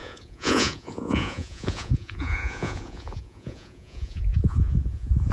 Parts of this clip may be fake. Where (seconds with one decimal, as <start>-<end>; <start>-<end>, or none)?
0.0-5.3